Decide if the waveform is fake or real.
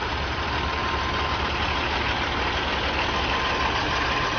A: real